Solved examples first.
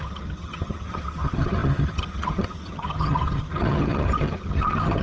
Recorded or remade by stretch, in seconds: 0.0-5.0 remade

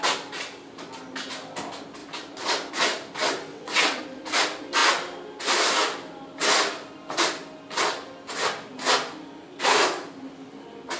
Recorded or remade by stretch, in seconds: 0.0-3.5 recorded; 3.5-4.0 remade; 4.0-11.0 recorded

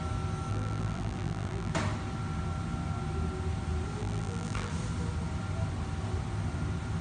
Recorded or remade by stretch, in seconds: 0.0-0.5 recorded; 0.5-1.7 remade; 1.7-4.0 recorded; 4.0-4.7 remade; 4.7-7.0 recorded

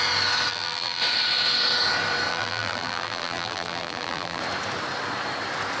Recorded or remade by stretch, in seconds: 0.0-0.5 recorded; 0.5-1.0 remade; 1.0-2.3 recorded; 2.3-4.4 remade; 4.4-5.8 recorded

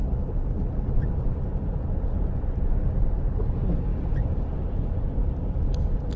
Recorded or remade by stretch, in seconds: 0.0-6.2 recorded

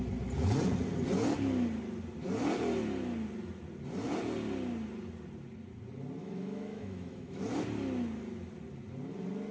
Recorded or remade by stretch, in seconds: 0.0-6.2 recorded; 6.2-7.4 remade; 7.4-9.5 recorded